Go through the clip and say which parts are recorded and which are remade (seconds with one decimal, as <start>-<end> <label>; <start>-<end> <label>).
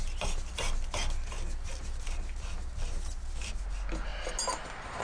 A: 0.0-5.0 recorded